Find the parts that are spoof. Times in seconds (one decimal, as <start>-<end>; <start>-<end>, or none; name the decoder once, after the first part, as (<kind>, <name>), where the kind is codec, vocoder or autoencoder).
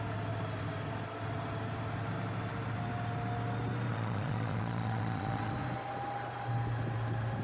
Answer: 3.9-5.5 (vocoder, Vocos)